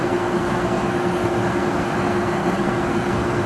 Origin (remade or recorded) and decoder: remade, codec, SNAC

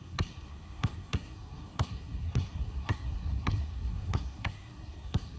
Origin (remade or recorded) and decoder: remade, codec, SNAC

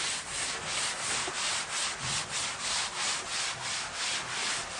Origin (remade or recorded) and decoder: recorded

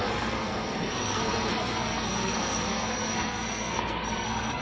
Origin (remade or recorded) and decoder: remade, codec, SNAC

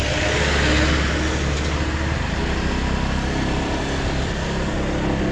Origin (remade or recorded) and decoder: recorded